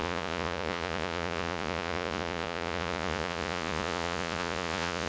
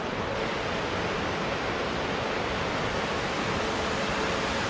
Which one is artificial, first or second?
first